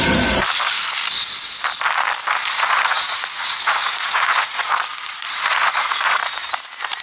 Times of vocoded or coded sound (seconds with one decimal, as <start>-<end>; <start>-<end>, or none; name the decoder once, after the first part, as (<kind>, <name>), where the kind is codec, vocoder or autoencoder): 2.4-6.5 (vocoder, Vocos)